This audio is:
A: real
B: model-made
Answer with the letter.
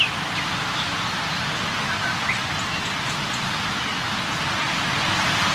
A